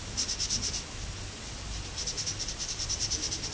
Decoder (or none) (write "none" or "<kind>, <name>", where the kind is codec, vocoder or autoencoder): none